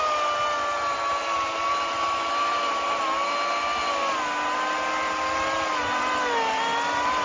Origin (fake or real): real